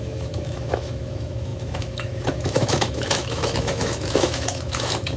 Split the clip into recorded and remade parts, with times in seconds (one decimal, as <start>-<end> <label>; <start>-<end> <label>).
0.0-5.2 remade